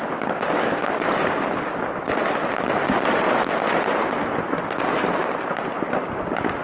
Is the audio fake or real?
real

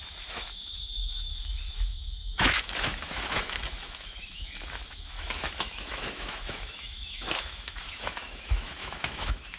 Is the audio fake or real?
fake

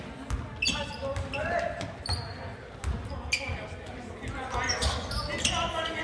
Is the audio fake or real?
real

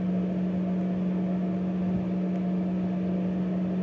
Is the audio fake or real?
real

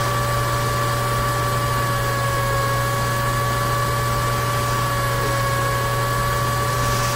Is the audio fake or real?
real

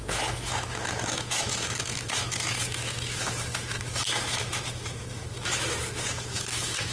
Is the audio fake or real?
fake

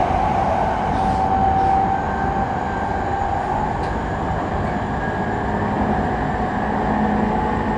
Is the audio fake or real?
real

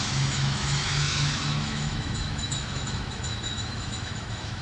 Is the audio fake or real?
fake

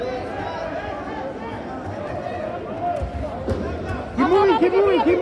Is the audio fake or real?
real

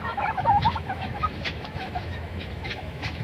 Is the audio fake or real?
fake